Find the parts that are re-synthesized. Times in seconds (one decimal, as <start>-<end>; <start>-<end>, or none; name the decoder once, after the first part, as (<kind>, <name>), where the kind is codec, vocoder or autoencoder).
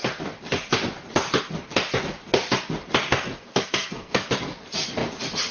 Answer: 3.1-4.3 (codec, SNAC)